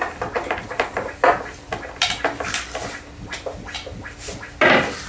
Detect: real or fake real